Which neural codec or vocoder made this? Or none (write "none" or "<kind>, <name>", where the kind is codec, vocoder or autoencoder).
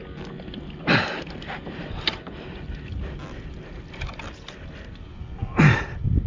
none